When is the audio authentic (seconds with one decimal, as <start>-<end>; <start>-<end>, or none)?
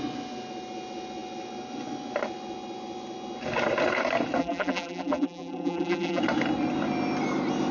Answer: 0.0-4.4; 6.2-7.7